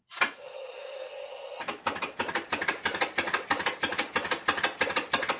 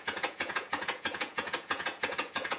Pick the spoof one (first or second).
second